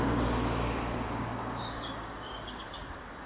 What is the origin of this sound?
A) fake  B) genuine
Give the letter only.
A